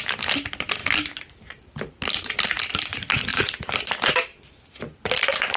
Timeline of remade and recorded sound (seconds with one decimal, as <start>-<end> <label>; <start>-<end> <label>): 0.0-0.8 recorded; 0.8-2.3 remade; 2.3-3.3 recorded; 3.3-3.8 remade; 3.8-4.3 recorded; 4.3-5.6 remade